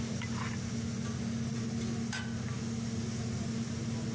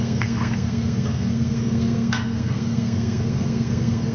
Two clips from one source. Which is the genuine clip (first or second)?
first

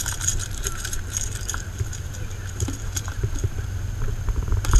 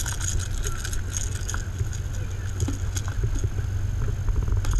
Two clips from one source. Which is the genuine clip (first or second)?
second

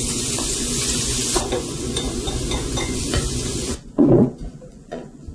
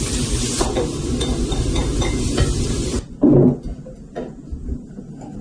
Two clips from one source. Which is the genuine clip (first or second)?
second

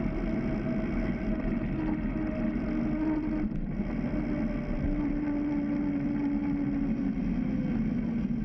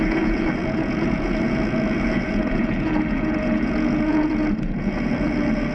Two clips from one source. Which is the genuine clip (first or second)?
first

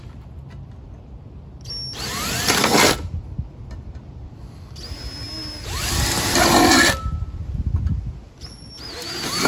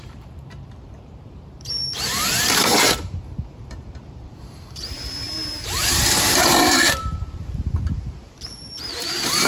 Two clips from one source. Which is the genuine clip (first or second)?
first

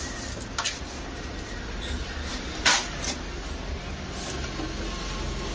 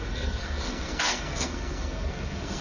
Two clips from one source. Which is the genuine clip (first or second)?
first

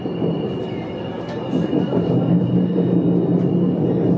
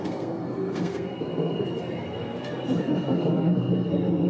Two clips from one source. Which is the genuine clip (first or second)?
first